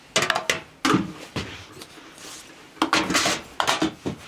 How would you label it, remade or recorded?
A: recorded